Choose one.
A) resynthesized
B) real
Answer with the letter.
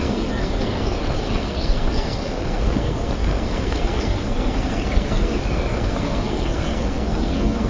A